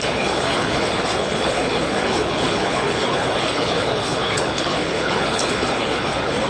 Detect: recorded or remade remade